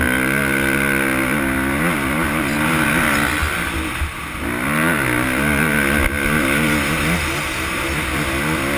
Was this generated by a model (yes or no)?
no